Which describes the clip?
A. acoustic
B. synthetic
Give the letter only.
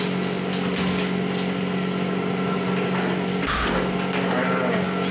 A